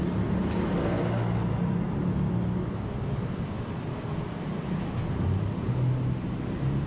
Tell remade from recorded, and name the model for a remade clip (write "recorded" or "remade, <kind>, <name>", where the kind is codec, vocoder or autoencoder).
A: recorded